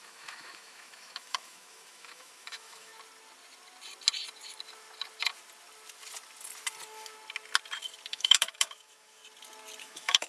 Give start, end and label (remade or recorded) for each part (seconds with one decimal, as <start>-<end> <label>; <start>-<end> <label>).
0.0-2.9 remade; 2.9-8.1 recorded; 8.1-9.2 remade; 9.2-9.8 recorded; 9.8-10.3 remade